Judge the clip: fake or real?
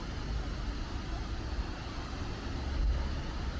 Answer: real